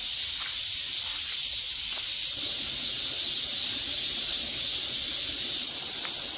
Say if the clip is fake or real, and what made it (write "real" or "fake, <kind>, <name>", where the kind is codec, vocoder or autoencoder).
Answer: real